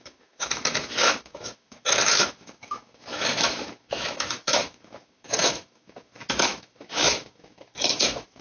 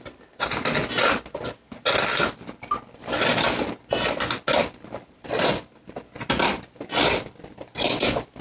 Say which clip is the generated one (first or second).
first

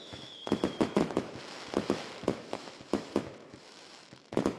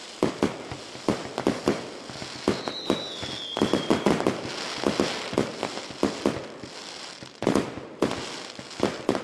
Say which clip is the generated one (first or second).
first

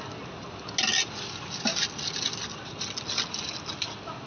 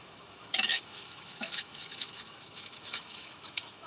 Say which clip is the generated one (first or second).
second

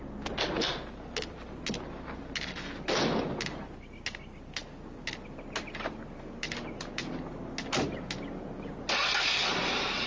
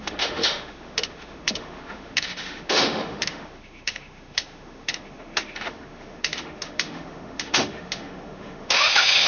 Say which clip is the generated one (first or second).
second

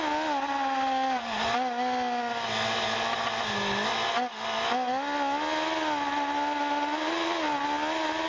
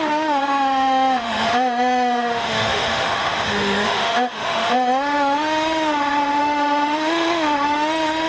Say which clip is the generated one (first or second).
second